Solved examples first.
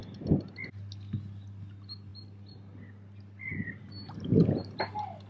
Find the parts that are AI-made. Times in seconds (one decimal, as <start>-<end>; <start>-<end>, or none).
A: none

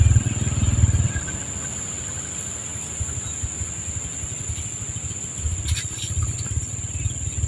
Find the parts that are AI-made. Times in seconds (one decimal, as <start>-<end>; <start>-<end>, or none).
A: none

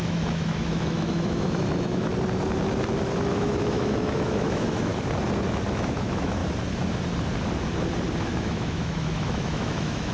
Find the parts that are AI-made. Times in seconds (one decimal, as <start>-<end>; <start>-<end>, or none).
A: 0.0-2.1; 3.3-4.9; 5.7-6.4; 8.2-10.1

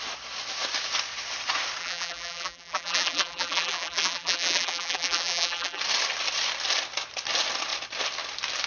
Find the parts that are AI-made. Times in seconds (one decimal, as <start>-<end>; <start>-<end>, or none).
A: 1.8-5.8

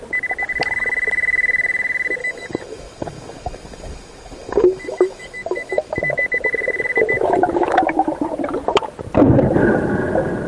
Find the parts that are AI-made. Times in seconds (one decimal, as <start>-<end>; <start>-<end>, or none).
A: 2.2-6.0

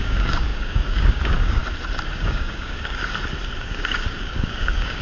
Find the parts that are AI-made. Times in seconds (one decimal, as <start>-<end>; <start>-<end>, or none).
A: 0.0-1.6; 2.2-3.0; 3.6-5.0